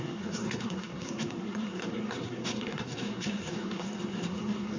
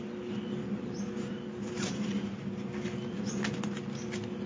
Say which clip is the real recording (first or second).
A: second